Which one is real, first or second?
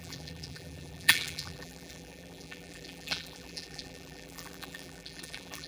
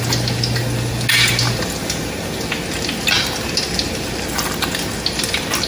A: second